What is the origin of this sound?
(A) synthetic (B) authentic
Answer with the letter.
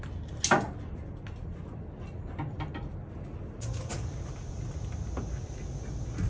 B